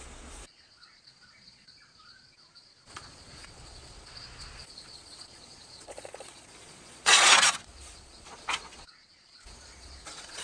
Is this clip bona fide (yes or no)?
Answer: no